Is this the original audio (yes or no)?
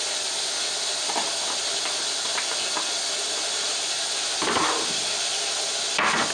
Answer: yes